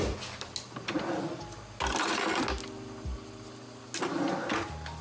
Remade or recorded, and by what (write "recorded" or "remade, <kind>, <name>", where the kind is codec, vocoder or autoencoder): recorded